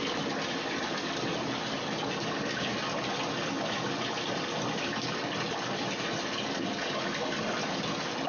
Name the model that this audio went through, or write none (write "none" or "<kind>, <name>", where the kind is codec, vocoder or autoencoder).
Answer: none